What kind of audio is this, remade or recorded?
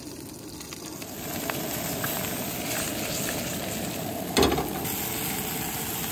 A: recorded